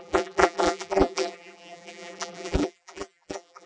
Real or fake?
fake